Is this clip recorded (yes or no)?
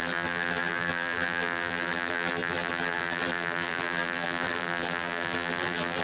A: no